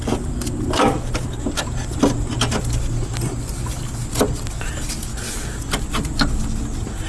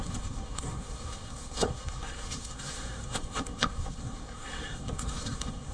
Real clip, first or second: first